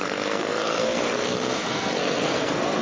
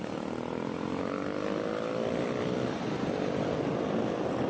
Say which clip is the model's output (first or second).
first